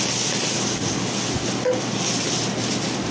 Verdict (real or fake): real